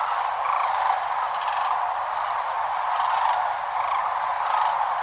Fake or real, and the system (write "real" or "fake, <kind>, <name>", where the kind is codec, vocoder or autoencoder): real